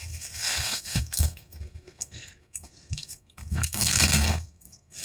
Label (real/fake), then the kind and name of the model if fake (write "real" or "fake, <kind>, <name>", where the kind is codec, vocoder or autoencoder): fake, codec, SNAC